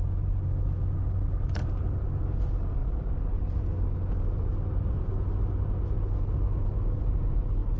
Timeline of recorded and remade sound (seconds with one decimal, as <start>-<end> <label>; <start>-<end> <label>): 0.0-7.8 recorded